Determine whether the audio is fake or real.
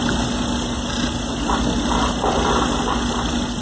real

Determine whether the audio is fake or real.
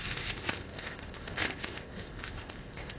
fake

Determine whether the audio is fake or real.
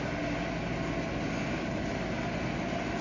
real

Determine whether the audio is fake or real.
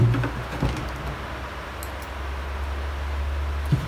real